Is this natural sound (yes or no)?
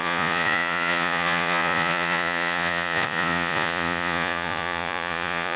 no